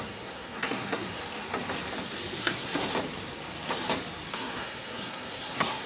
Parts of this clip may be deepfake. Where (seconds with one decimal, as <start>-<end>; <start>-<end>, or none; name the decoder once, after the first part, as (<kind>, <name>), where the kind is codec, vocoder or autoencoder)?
0.0-1.2 (codec, SNAC); 2.4-2.9; 4.3-5.9